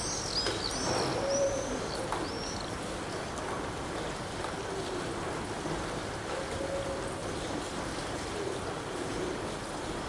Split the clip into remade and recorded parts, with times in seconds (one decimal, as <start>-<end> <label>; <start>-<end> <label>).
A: 0.0-1.1 recorded; 1.1-1.9 remade; 1.9-7.2 recorded; 7.2-8.8 remade; 8.8-10.1 recorded